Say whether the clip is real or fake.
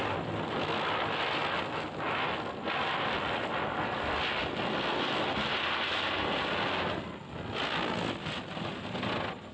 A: real